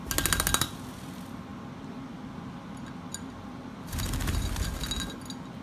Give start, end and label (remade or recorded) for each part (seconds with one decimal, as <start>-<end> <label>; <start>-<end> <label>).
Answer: 0.0-5.6 recorded